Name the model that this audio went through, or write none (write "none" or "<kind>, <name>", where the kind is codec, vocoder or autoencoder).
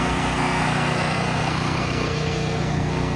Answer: codec, SNAC